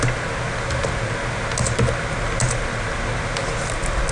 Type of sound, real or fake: real